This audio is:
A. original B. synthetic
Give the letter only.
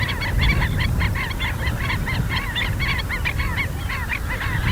A